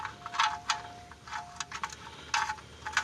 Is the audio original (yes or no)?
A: yes